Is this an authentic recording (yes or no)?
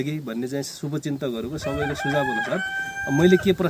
yes